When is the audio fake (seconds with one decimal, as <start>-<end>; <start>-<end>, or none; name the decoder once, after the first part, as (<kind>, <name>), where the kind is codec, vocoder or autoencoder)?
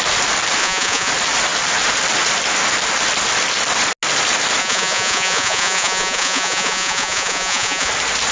0.6-1.1 (vocoder, Vocos); 4.6-7.9